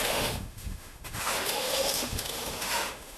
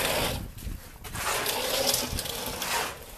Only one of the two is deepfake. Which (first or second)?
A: first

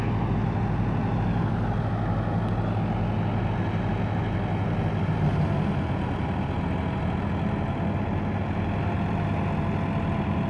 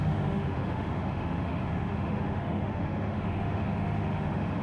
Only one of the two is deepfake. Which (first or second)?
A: second